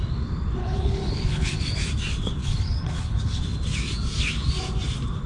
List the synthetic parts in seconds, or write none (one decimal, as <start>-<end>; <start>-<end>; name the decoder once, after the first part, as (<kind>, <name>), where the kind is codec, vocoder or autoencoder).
0.6-1.6 (codec, HILCodec); 2.4-3.4